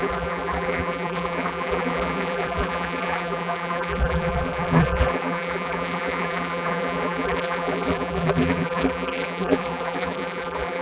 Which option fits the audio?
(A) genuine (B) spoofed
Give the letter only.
B